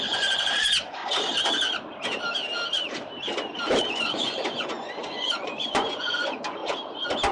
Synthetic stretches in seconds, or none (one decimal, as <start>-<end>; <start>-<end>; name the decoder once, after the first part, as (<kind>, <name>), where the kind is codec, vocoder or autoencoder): 0.0-1.0 (vocoder, Vocos); 3.8-6.6